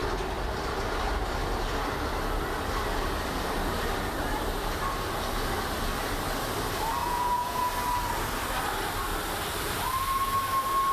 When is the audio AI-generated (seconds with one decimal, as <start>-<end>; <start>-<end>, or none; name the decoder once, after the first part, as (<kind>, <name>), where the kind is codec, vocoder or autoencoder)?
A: 7.0-7.7 (vocoder, Vocos)